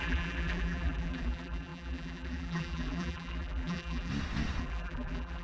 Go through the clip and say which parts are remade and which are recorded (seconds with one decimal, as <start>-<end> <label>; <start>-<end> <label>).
0.0-4.1 remade; 4.1-4.6 recorded; 4.6-5.4 remade